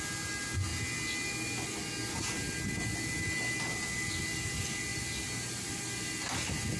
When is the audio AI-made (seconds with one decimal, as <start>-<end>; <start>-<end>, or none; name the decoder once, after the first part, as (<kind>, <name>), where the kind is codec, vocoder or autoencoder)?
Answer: none